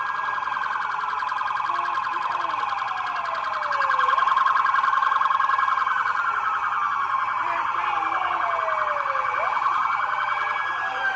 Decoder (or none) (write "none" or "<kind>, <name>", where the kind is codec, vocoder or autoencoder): none